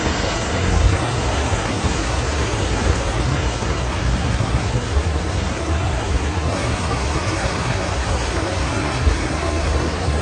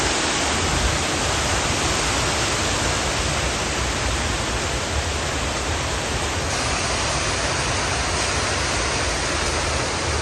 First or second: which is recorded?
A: second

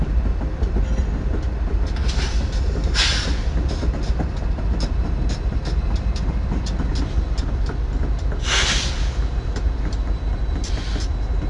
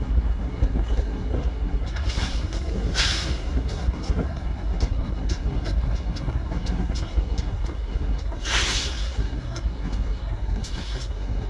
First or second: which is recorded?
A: first